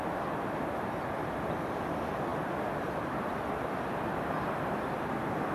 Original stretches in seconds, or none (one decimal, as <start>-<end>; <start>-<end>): 0.0-5.5